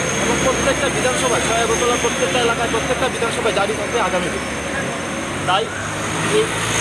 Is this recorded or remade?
recorded